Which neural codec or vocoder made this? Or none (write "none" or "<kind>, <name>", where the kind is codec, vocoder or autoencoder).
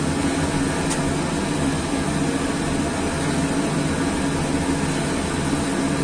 none